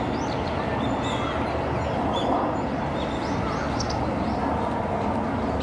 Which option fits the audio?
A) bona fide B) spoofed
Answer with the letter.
A